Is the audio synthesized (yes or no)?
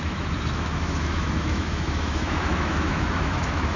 yes